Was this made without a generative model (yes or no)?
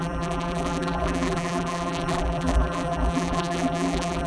no